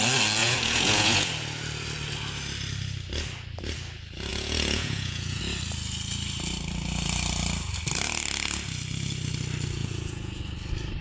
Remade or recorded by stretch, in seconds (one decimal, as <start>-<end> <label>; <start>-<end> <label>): 0.0-0.4 recorded; 0.4-1.3 remade; 1.3-4.3 recorded; 4.3-5.4 remade; 5.4-9.8 recorded; 9.8-10.4 remade; 10.4-11.0 recorded